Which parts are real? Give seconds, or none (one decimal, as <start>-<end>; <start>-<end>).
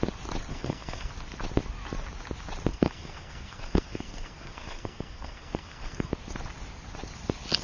0.0-0.5; 1.1-2.7; 6.1-7.6